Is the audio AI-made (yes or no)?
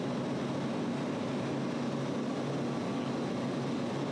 no